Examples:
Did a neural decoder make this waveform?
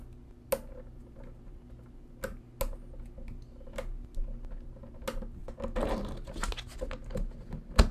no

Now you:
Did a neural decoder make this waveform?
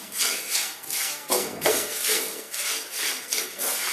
yes